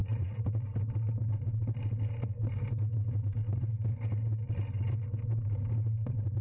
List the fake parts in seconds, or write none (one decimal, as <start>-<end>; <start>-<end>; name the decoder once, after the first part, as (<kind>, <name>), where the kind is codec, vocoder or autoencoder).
0.0-0.6 (vocoder, Vocos)